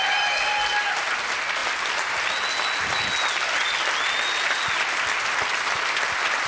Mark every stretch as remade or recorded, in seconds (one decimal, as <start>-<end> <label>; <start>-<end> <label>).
0.0-6.5 recorded